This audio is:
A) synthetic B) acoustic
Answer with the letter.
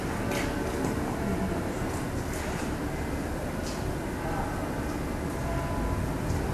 B